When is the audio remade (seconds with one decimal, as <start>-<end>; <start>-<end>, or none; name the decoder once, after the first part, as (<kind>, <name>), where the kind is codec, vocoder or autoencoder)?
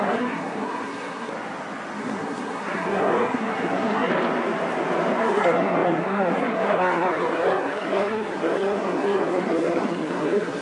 0.0-1.3 (codec, SNAC); 2.0-4.1; 5.2-10.6